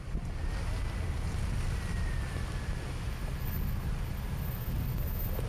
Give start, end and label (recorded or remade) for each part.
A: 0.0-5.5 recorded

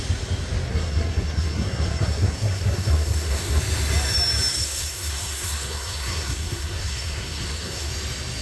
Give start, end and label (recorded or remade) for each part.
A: 0.0-0.7 recorded; 0.7-3.6 remade; 3.6-4.5 recorded; 4.5-7.9 remade; 7.9-8.4 recorded

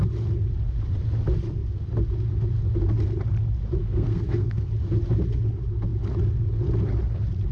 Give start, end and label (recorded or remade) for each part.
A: 0.0-3.8 recorded; 3.8-4.7 remade; 4.7-7.5 recorded